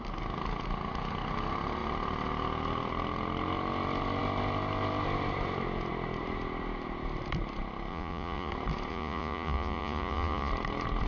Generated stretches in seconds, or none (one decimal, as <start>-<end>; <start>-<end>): 7.9-8.5; 8.9-10.5